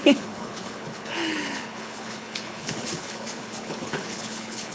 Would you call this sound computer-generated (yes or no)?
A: yes